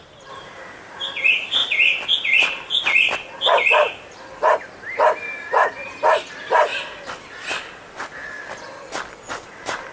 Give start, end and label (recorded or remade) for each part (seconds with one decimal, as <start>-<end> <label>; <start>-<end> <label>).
0.0-1.6 remade; 1.6-6.3 recorded; 6.3-6.7 remade; 6.7-9.5 recorded; 9.5-9.9 remade